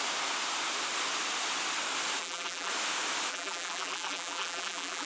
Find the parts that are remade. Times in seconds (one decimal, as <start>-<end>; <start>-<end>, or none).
2.2-2.7; 3.3-5.1